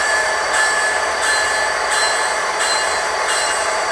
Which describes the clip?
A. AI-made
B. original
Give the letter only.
A